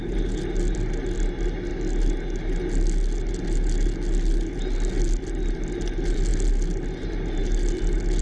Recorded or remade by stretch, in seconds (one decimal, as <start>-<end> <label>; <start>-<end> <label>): 0.0-8.2 recorded